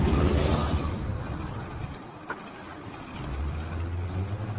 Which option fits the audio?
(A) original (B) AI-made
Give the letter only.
A